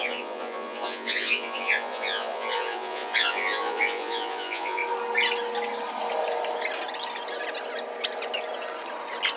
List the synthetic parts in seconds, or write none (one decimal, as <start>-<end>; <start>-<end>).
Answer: 0.0-4.8